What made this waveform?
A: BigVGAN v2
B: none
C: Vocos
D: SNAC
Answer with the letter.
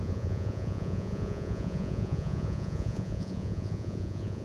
C